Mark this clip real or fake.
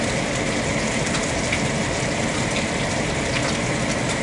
real